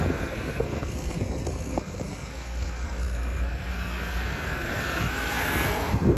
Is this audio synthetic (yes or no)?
yes